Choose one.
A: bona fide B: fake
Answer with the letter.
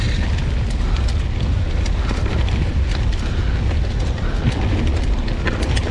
A